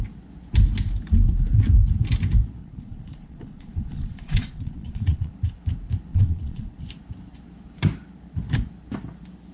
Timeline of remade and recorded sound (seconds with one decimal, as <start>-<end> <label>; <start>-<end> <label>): 0.0-2.6 recorded; 2.6-5.3 remade; 5.3-6.1 recorded; 6.1-6.8 remade; 6.8-9.5 recorded

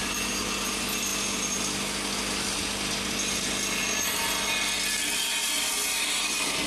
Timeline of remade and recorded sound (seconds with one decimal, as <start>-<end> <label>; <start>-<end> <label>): 0.0-6.7 recorded

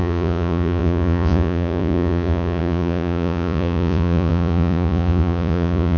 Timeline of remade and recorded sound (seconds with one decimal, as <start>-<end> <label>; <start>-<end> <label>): 0.0-6.0 remade

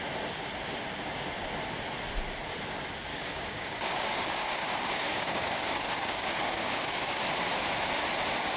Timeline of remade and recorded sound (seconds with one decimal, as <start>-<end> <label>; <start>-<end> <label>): 0.0-3.1 recorded; 3.1-7.2 remade; 7.2-8.6 recorded

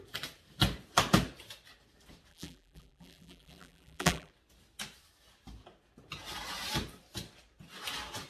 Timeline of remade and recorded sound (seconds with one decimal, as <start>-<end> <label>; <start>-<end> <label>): 0.0-2.3 recorded; 2.3-4.3 remade; 4.3-8.3 recorded

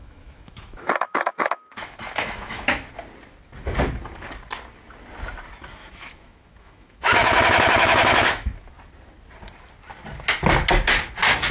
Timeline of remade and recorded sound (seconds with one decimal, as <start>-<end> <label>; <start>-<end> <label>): 0.0-2.9 remade; 2.9-5.8 recorded; 5.8-8.7 remade; 8.7-11.5 recorded